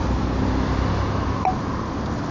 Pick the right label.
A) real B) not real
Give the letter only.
A